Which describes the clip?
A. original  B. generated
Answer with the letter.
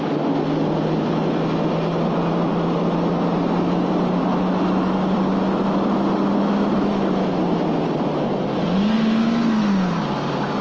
A